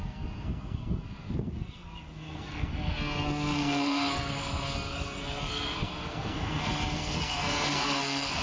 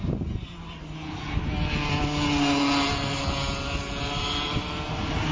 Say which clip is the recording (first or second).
second